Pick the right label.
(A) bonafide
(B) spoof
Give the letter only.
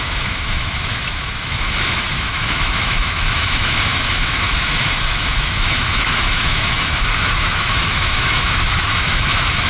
B